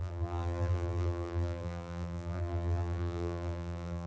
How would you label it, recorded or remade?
remade